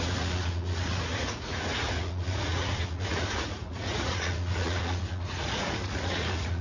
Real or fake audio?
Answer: fake